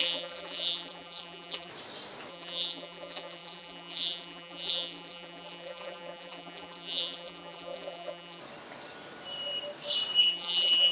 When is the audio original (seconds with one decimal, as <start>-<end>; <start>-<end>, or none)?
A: 1.7-2.3; 8.4-10.2